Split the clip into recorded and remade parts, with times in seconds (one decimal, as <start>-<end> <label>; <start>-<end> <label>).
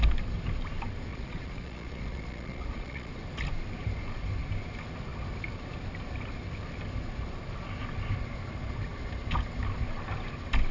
0.0-1.1 recorded; 1.1-3.1 remade; 3.1-10.7 recorded